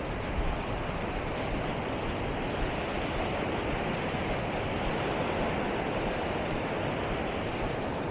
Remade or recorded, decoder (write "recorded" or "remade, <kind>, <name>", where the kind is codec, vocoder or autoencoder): recorded